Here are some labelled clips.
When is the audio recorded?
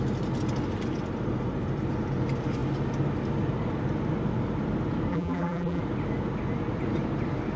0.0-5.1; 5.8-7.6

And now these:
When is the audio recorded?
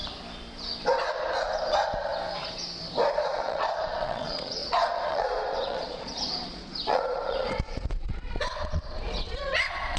0.0-1.7; 2.1-3.1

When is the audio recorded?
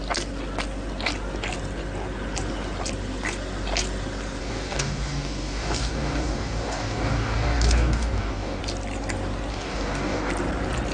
0.0-4.4; 8.6-9.5; 10.3-10.9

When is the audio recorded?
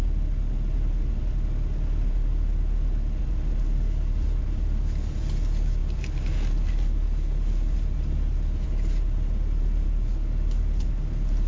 0.0-11.5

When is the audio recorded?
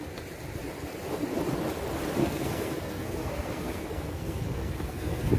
0.0-2.2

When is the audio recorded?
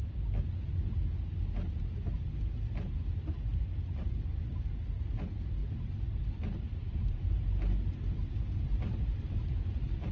0.0-5.6; 7.3-10.1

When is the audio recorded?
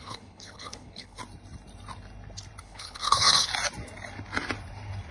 1.2-2.6; 3.5-5.1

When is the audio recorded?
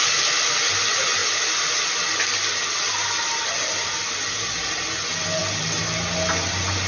0.0-6.9